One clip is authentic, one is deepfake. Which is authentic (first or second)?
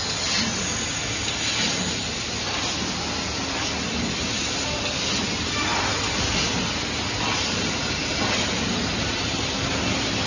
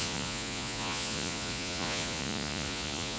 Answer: first